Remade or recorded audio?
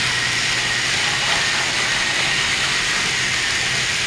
recorded